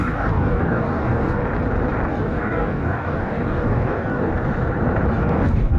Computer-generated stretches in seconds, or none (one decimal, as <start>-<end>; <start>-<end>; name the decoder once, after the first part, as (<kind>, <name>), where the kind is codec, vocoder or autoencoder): 0.0-1.4 (codec, DAC); 2.1-4.3; 5.1-5.8